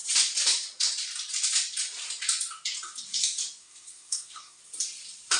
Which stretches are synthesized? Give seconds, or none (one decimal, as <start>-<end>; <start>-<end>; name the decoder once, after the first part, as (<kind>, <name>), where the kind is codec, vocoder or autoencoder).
3.6-4.6 (codec, SNAC)